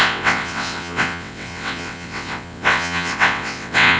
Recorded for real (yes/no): no